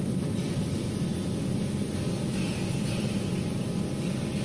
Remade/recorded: recorded